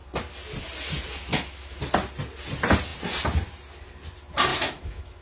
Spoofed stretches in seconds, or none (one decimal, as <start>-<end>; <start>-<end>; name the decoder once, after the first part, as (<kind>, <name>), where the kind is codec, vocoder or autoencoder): 1.3-1.8 (autoencoder, DAC-VAE); 4.5-5.2